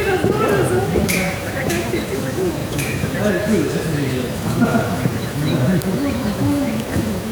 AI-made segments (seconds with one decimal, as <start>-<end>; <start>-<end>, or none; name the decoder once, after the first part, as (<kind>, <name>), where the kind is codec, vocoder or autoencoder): 0.8-7.3 (autoencoder, DAC-VAE)